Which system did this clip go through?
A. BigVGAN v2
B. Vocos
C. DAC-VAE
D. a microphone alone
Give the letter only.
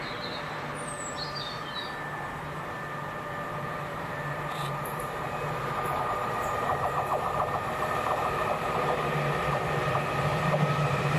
A